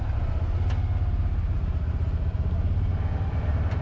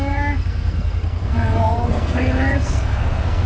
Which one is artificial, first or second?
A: second